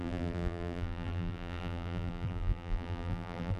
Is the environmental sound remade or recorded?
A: remade